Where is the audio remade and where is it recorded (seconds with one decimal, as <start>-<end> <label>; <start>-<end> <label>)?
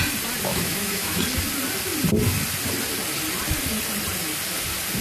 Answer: 0.0-0.5 recorded; 0.5-1.2 remade; 1.2-5.0 recorded